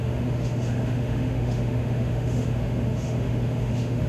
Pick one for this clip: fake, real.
fake